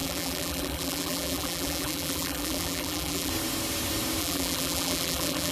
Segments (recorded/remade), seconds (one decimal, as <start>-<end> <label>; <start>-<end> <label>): 0.0-3.3 remade; 3.3-4.2 recorded; 4.2-5.5 remade